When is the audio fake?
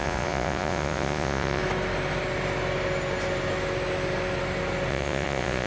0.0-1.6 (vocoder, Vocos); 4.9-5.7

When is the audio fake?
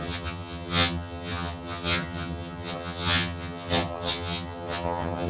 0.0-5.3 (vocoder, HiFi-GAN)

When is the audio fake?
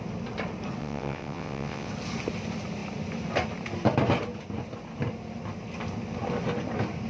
0.8-1.9 (vocoder, WaveNeXt)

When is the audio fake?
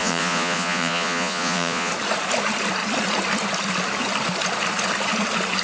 0.0-1.9 (vocoder, Vocos)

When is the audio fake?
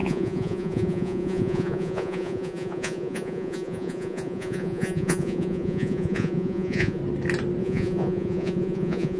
0.0-7.0 (vocoder, Vocos); 7.6-9.2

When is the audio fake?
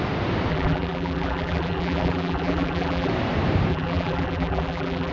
0.5-3.1 (vocoder, BigVGAN v2); 3.7-5.1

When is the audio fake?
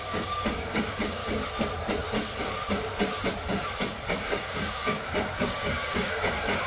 0.0-1.2 (codec, DAC); 4.2-6.7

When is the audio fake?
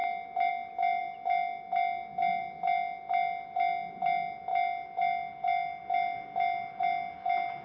none